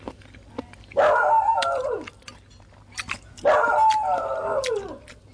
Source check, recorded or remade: recorded